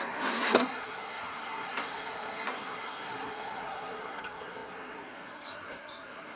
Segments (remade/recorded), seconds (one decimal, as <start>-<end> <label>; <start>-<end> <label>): 0.0-6.4 remade